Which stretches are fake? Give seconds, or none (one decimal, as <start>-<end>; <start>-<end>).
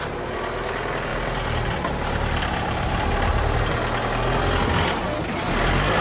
none